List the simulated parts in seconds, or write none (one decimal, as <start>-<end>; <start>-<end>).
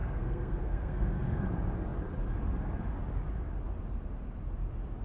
0.0-1.4